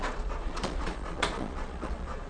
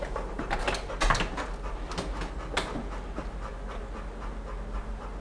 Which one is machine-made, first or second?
first